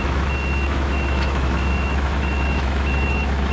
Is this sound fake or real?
fake